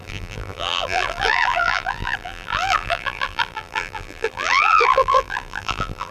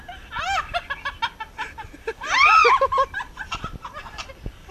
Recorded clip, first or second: second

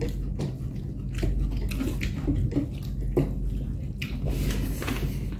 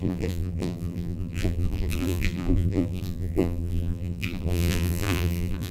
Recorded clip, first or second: first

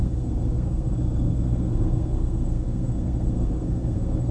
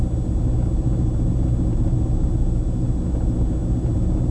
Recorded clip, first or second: second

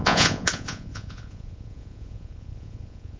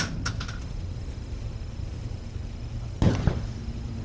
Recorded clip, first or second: second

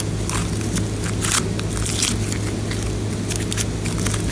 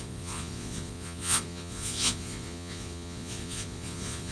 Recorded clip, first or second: first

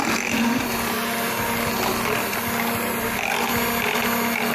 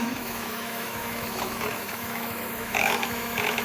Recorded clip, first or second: first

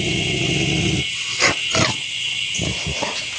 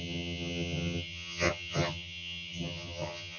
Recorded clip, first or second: first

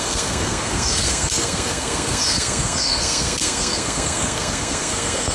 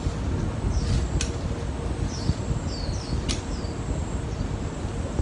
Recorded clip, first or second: second